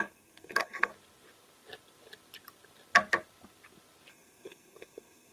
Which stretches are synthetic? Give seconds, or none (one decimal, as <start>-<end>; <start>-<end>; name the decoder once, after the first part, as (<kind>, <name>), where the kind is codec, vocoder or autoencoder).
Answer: 0.0-0.9 (codec, SNAC); 4.1-5.3